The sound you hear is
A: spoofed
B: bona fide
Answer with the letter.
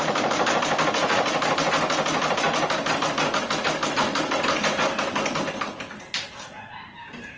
B